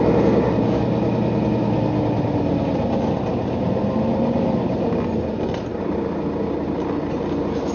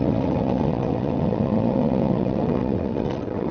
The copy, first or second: second